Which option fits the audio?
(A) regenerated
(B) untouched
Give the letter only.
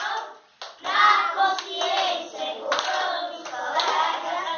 B